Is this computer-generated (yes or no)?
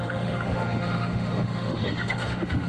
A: yes